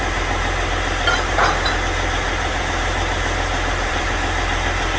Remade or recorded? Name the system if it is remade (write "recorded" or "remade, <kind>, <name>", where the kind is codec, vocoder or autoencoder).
remade, vocoder, BigVGAN v2